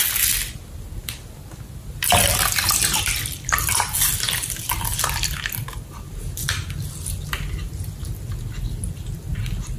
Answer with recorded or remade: recorded